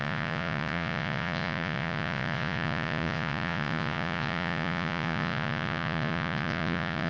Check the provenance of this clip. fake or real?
fake